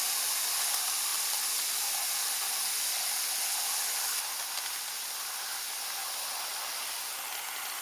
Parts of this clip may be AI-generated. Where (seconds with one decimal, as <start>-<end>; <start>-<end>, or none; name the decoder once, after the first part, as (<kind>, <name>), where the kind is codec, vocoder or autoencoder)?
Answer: none